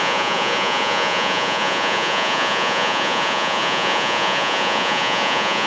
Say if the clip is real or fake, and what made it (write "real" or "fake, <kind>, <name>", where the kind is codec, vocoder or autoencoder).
fake, vocoder, Vocos